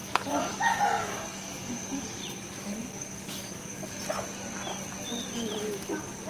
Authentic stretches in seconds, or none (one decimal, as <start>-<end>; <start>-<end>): 2.2-2.9; 3.8-6.3

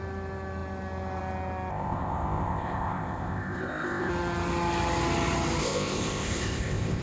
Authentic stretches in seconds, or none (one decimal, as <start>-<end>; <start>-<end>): 0.0-1.7; 4.1-5.6